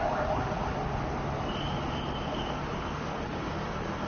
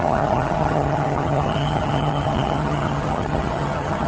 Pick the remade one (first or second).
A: second